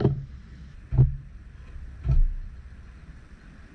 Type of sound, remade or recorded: recorded